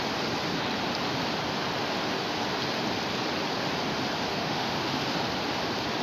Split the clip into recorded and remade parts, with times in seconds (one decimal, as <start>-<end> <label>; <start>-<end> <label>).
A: 0.0-4.3 recorded; 4.3-5.2 remade; 5.2-6.0 recorded